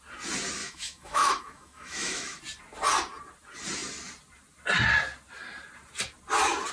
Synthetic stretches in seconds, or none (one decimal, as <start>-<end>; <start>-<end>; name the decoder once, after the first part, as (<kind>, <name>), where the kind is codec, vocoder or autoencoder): 0.6-2.4 (autoencoder, DAC-VAE)

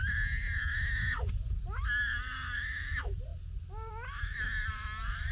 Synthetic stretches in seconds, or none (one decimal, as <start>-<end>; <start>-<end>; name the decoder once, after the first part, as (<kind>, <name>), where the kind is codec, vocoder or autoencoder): none

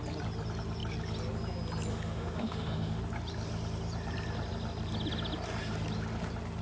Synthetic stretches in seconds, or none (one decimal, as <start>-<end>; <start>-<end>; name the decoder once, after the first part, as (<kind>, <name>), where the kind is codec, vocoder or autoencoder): 1.9-3.0 (autoencoder, DAC-VAE)